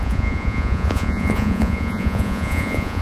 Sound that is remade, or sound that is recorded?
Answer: remade